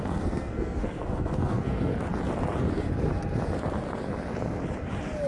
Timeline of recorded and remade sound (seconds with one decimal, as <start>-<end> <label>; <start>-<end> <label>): 0.0-1.9 remade; 1.9-5.3 recorded